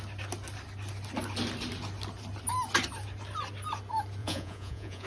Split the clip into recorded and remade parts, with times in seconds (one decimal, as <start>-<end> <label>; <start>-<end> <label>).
0.0-4.2 recorded; 4.2-5.1 remade